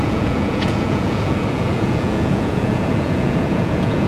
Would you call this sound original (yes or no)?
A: no